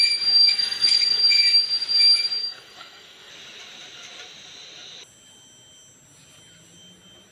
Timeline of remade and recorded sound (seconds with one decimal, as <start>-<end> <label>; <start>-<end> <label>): 0.0-0.5 recorded; 0.5-1.2 remade; 1.2-2.4 recorded; 2.4-3.3 remade; 3.3-7.3 recorded

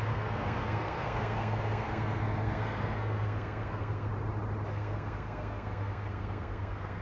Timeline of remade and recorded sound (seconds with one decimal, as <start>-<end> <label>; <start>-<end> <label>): 0.0-4.1 remade; 4.1-4.7 recorded; 4.7-7.0 remade